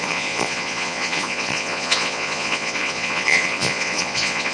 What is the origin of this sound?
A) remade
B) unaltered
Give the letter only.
A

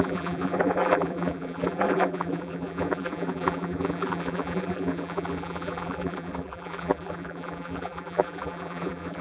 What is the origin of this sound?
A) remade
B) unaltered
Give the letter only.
A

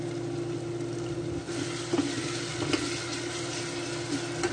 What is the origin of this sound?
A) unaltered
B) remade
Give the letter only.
A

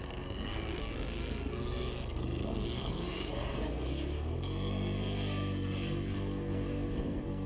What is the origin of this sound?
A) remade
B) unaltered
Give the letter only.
A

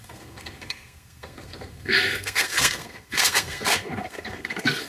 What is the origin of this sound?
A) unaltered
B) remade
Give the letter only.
B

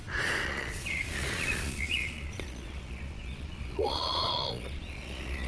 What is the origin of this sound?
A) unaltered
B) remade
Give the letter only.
B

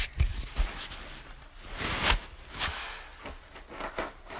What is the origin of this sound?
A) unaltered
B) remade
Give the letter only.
A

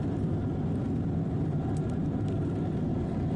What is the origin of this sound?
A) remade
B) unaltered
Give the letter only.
B